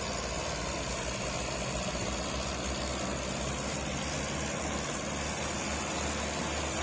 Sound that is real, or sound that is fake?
real